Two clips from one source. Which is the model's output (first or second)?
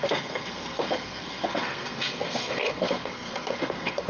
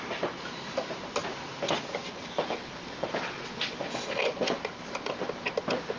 first